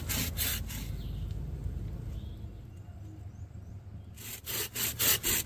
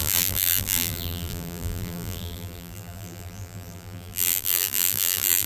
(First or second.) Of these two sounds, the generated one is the second